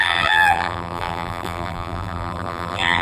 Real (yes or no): no